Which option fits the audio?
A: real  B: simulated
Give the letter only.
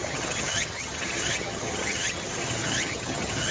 B